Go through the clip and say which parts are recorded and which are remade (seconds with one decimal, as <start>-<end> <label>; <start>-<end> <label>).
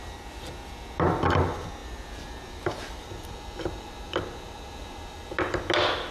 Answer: 0.0-6.1 recorded